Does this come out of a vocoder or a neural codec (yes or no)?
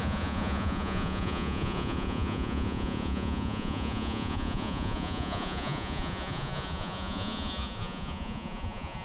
yes